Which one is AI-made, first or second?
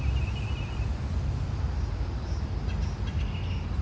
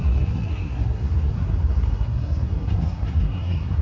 second